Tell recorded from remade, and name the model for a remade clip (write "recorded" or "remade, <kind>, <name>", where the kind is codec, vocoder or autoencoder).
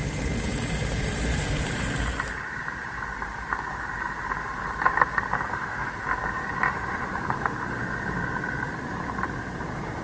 remade, vocoder, BigVGAN v2